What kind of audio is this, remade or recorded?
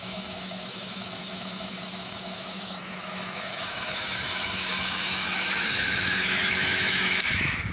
remade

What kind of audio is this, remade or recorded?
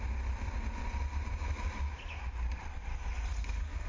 recorded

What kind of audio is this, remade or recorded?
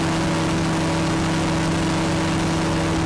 recorded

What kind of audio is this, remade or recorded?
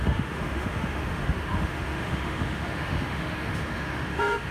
remade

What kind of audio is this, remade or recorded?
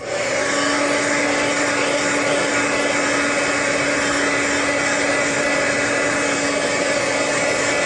recorded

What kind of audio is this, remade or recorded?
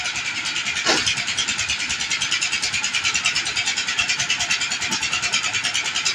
recorded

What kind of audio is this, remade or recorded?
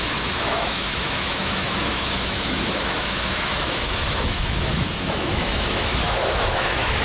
remade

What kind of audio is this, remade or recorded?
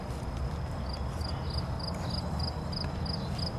recorded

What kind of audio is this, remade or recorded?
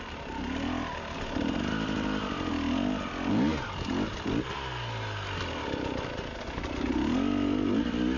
recorded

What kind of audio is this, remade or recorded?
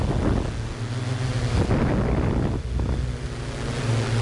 recorded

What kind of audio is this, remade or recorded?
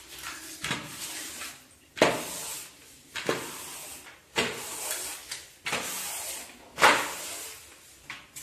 recorded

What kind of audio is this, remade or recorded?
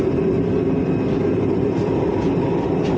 recorded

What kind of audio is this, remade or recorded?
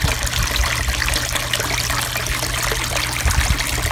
recorded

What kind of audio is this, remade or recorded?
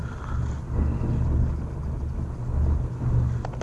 recorded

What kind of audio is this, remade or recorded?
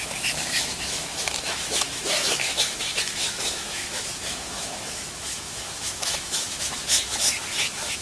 remade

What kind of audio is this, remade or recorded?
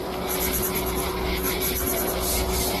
recorded